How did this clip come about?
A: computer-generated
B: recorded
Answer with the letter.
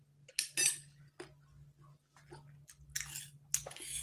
B